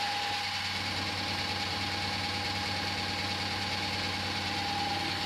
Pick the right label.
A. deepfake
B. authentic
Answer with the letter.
B